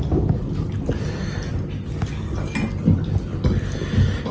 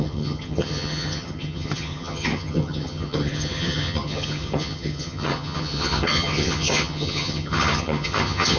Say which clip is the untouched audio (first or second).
first